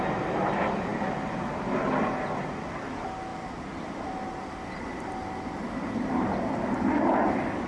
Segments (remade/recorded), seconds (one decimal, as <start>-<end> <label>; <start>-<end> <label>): 0.0-3.3 recorded; 3.3-3.9 remade; 3.9-7.7 recorded